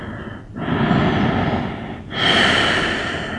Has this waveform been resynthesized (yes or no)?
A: no